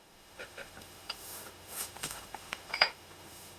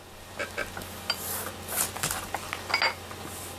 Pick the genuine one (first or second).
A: second